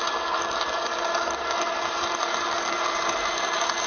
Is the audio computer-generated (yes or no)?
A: no